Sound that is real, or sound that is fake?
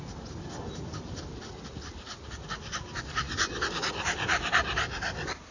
real